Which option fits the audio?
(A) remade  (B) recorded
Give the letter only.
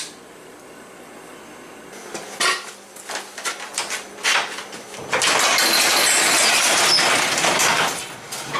B